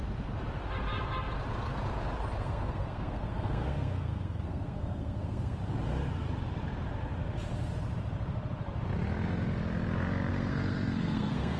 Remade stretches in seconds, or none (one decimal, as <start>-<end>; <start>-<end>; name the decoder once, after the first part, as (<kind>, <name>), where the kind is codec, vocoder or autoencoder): 2.4-5.6 (codec, SNAC); 10.3-11.6